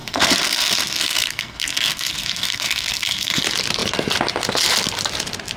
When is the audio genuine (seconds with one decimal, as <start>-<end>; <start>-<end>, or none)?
3.4-5.6